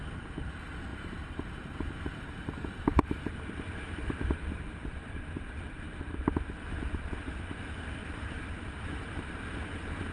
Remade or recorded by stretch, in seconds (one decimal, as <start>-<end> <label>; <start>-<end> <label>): 0.0-0.9 recorded; 0.9-5.6 remade; 5.6-8.0 recorded; 8.0-8.7 remade; 8.7-10.1 recorded

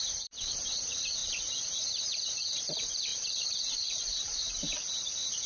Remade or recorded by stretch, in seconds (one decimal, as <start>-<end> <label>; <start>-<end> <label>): 0.0-5.5 remade

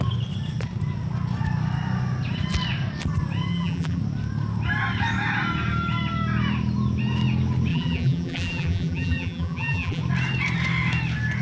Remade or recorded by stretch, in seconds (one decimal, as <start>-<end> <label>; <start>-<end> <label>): 0.0-3.5 recorded; 3.5-4.0 remade; 4.0-7.7 recorded; 7.7-10.0 remade; 10.0-11.4 recorded